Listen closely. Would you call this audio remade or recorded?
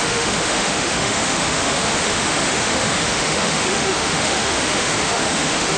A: remade